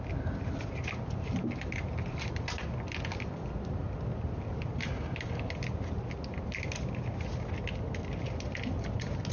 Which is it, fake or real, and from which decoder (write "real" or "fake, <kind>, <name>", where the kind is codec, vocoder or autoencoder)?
real